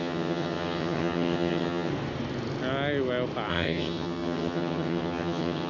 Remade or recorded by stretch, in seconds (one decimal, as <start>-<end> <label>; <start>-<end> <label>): 0.0-1.9 remade; 1.9-3.5 recorded; 3.5-5.7 remade